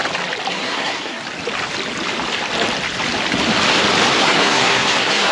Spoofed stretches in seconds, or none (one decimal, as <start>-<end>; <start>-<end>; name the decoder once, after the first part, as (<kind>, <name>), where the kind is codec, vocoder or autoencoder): 0.5-1.2 (codec, SNAC); 4.2-5.3